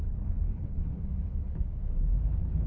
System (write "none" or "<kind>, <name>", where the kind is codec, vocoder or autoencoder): codec, HILCodec